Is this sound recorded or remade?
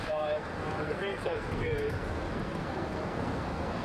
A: remade